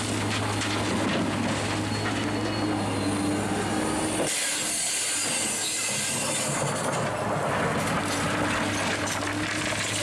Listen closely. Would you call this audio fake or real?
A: real